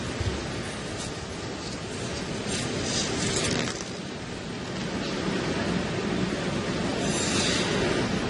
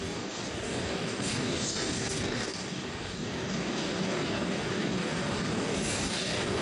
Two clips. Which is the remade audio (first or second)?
second